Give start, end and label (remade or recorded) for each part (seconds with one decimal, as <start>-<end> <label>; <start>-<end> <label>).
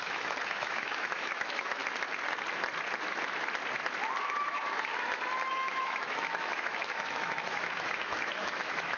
0.0-1.8 remade; 1.8-4.2 recorded; 4.2-4.9 remade; 4.9-5.5 recorded; 5.5-9.0 remade